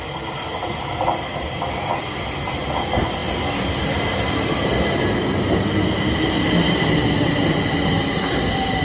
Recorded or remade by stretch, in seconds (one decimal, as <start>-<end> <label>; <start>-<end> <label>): 0.0-8.8 recorded